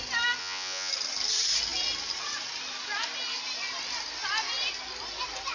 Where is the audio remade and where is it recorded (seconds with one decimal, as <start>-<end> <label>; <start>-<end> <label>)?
0.0-0.4 recorded; 0.4-0.9 remade; 0.9-5.5 recorded